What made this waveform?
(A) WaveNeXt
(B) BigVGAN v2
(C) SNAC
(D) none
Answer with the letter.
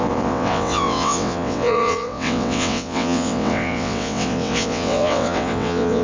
A